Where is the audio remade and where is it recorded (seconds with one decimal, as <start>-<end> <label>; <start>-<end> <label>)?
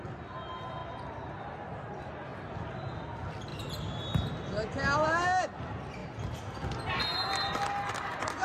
0.0-0.8 recorded; 0.8-1.4 remade; 1.4-8.4 recorded